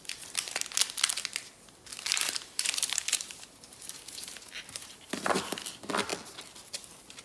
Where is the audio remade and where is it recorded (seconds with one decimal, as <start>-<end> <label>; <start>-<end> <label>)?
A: 0.0-1.9 recorded; 1.9-5.6 remade; 5.6-7.2 recorded